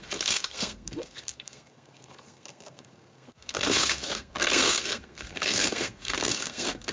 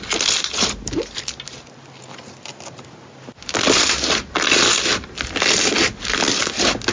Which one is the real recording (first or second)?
second